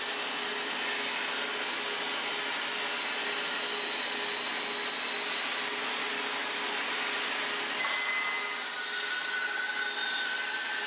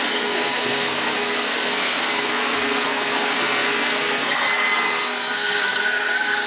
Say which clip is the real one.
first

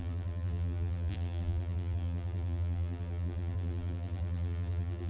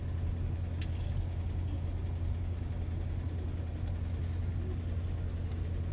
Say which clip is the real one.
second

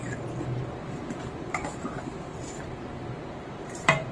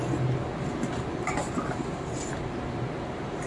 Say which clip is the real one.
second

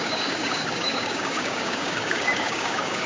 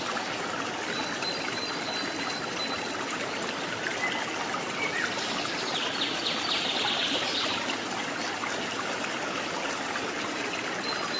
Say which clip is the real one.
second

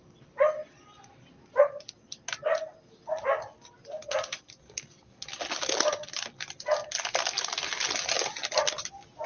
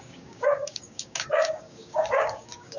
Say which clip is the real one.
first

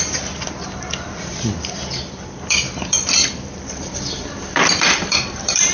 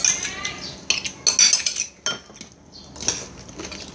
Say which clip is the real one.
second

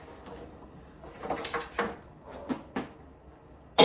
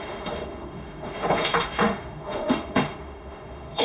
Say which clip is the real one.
first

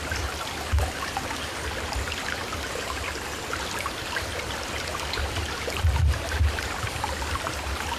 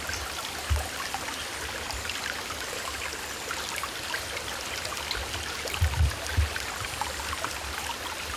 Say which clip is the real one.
second